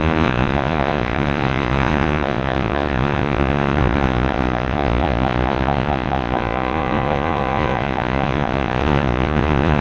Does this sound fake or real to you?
fake